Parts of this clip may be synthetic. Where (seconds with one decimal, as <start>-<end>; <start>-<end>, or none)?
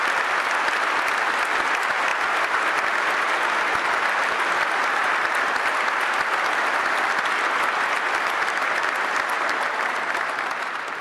none